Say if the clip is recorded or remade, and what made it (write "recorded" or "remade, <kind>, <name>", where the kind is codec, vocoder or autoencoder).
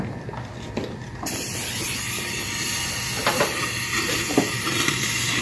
recorded